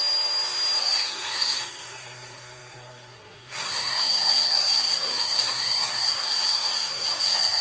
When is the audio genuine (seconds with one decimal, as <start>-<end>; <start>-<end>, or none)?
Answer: 0.0-0.8